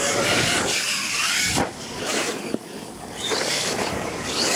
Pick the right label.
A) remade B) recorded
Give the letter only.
A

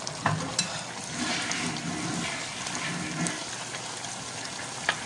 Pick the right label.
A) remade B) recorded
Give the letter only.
B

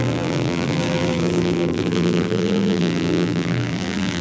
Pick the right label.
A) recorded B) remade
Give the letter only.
B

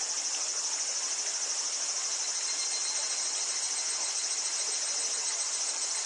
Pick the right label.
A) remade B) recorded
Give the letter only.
B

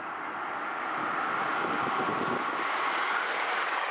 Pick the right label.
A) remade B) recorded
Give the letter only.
A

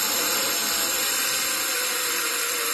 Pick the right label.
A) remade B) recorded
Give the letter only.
B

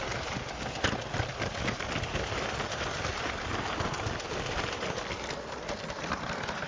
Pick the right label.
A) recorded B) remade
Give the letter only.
A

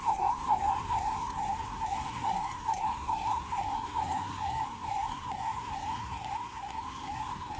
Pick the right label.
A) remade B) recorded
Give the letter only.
A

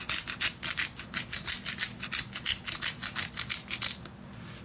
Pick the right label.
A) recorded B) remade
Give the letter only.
A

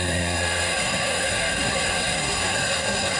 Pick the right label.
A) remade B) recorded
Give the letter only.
A